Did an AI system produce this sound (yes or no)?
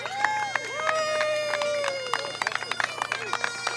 no